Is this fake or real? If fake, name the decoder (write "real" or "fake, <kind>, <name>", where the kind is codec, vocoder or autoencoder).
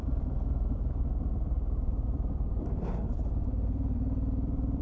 fake, vocoder, BigVGAN v2